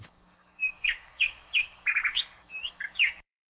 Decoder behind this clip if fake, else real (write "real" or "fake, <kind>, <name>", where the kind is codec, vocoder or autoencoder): fake, codec, DAC